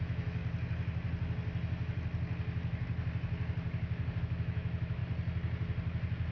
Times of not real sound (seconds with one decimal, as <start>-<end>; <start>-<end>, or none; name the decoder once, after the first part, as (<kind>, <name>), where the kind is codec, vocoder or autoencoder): 0.0-0.4 (autoencoder, DAC-VAE); 4.2-5.0